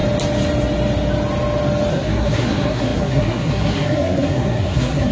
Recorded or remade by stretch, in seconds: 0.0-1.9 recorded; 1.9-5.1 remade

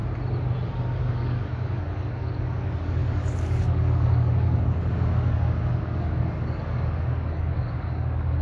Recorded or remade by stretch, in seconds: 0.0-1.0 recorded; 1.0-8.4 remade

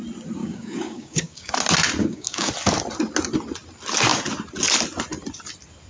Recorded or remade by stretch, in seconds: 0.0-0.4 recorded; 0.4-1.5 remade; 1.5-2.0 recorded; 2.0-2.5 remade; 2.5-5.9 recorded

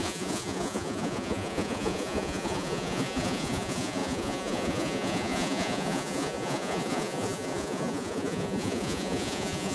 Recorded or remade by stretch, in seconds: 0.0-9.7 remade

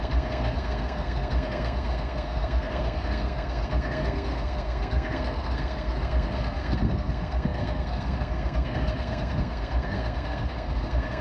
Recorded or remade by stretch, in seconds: 0.0-11.2 remade